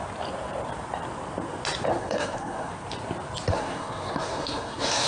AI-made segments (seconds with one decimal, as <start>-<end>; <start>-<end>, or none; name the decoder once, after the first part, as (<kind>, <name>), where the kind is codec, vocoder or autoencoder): 1.9-2.7 (codec, SNAC); 3.5-5.1